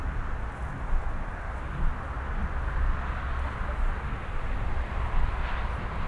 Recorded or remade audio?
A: recorded